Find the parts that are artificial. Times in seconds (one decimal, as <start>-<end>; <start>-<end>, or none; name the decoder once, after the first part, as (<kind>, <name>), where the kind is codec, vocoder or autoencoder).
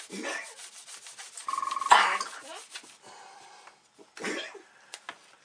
none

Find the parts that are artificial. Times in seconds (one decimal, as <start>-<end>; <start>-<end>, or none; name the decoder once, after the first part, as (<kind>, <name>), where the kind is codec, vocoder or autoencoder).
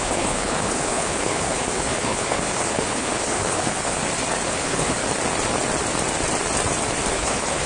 0.0-4.0 (codec, HILCodec); 4.5-5.0; 7.1-7.7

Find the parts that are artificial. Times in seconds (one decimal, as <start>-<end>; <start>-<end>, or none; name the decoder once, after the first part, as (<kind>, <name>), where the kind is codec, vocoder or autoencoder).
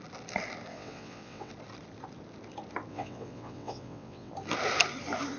0.7-1.5 (vocoder, WaveNeXt); 2.9-4.3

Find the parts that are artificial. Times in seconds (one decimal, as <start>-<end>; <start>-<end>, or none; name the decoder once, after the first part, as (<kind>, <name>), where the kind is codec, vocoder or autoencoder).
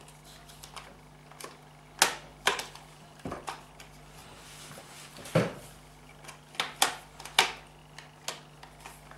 2.3-3.4 (vocoder, BigVGAN v2); 4.2-5.2